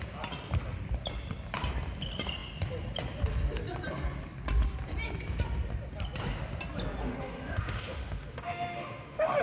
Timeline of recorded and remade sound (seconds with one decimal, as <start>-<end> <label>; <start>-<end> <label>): 0.0-7.0 recorded; 7.0-9.4 remade